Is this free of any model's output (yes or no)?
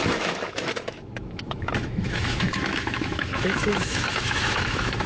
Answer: no